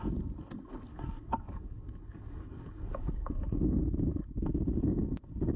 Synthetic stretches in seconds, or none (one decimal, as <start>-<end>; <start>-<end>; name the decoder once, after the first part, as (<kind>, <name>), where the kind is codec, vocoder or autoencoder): 0.9-4.3 (codec, DAC)